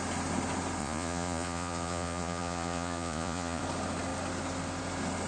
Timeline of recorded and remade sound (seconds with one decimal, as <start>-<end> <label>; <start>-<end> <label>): 0.0-0.8 recorded; 0.8-3.6 remade; 3.6-5.3 recorded